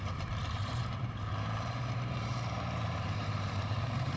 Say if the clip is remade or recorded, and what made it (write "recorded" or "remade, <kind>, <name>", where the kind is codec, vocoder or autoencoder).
remade, vocoder, BigVGAN v2